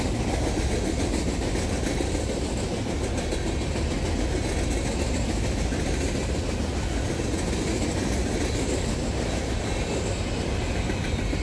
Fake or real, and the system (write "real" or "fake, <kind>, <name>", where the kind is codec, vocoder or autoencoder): real